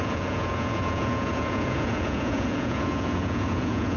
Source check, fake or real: fake